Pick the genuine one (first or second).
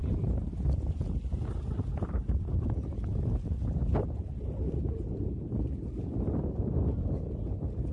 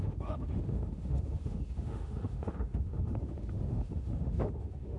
first